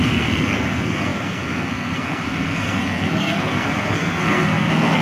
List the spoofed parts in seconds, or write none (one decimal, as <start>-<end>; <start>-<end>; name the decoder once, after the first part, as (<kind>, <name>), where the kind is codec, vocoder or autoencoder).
0.0-5.0 (codec, SNAC)

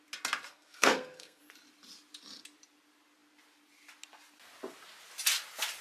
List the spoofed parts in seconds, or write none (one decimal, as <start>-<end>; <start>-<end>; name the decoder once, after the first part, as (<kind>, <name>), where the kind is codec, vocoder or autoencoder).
0.5-1.4 (codec, SNAC)

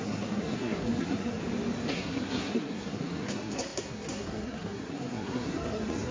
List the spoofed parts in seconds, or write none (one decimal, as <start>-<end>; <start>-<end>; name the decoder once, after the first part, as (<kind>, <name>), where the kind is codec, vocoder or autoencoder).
0.0-1.4 (codec, SNAC); 1.9-6.1

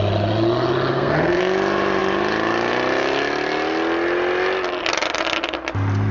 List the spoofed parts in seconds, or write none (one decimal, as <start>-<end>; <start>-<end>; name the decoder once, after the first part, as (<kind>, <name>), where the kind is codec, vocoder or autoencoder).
0.9-1.4 (codec, SNAC)

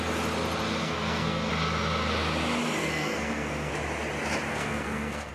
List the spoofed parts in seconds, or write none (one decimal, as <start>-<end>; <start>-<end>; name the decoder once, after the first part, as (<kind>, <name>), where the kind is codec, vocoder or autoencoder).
0.8-1.5 (codec, SNAC); 2.8-3.7; 4.5-5.3